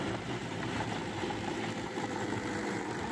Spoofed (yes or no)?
yes